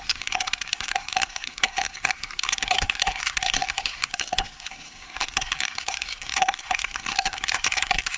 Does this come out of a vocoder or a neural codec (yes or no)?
yes